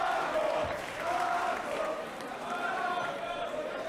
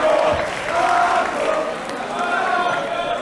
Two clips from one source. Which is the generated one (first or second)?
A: first